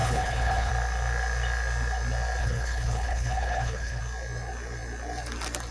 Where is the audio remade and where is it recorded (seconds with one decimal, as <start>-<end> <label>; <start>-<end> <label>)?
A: 0.0-0.7 remade; 0.7-2.4 recorded; 2.4-4.0 remade; 4.0-5.7 recorded